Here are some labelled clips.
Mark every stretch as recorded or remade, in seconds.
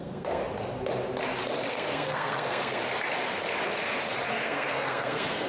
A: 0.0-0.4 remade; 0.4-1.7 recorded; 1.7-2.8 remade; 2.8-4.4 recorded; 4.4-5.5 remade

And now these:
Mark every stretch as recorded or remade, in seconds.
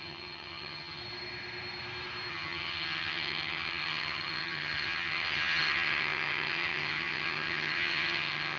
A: 0.0-1.0 remade; 1.0-2.3 recorded; 2.3-8.6 remade